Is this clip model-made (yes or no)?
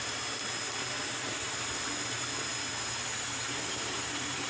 no